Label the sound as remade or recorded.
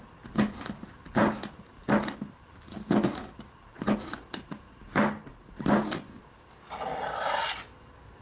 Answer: recorded